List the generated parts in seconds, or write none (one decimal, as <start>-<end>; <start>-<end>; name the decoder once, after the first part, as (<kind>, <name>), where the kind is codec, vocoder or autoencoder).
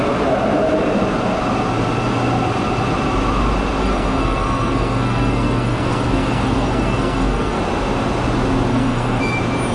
3.8-7.6 (codec, SNAC); 8.7-9.2